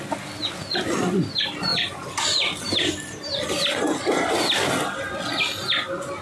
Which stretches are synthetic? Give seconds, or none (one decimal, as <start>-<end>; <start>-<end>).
none

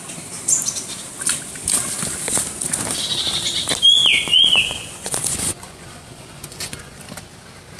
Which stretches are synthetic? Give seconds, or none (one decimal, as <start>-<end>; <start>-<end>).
4.0-7.0

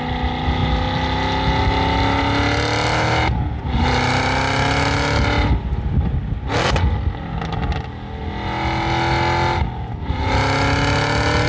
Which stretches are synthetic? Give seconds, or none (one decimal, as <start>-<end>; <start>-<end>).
none

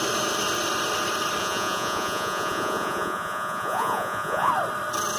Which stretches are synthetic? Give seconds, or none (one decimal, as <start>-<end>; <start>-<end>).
1.4-4.5